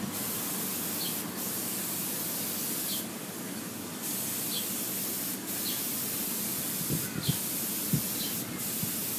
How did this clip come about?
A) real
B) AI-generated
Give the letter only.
A